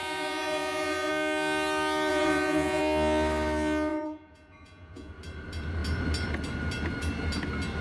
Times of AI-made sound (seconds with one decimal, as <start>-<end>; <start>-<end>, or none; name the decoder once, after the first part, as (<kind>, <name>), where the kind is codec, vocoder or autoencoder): 0.0-1.1 (vocoder, Vocos); 2.1-2.8; 3.9-5.1